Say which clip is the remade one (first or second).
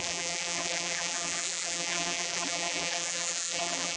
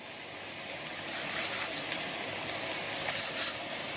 first